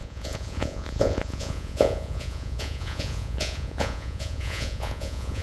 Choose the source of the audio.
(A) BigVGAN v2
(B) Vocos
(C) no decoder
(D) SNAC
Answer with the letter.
B